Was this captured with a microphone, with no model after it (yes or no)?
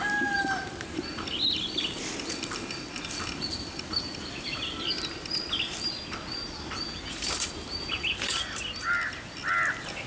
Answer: yes